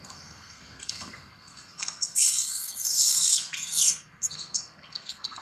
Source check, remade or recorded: remade